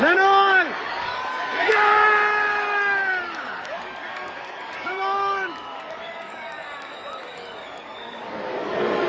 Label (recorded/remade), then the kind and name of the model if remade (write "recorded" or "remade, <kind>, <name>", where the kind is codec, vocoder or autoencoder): remade, codec, DAC